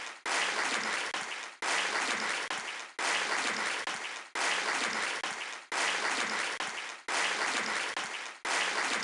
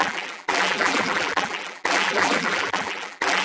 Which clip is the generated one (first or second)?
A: second